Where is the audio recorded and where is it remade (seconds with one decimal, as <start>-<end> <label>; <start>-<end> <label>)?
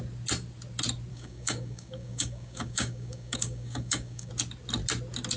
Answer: 0.0-1.1 recorded; 1.1-4.3 remade; 4.3-5.4 recorded